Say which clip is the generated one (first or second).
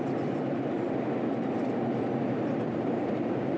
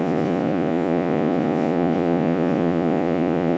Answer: second